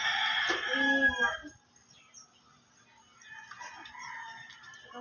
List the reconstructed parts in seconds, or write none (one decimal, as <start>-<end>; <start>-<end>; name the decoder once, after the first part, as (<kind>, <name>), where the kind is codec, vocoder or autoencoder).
none